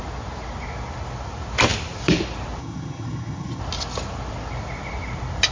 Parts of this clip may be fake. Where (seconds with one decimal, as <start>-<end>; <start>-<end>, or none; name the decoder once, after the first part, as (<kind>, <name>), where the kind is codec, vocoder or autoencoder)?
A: 2.6-3.6 (vocoder, HiFi-GAN)